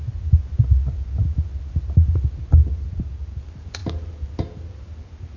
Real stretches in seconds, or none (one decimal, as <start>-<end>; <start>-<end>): 0.0-5.4